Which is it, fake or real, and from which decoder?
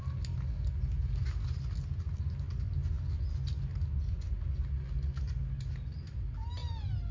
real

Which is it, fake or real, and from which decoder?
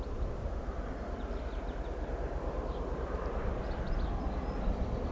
real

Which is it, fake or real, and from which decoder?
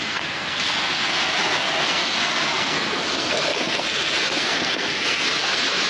fake, codec, SNAC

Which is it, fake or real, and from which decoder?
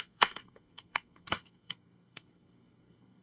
fake, codec, SNAC